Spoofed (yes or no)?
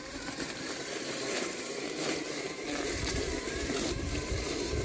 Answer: yes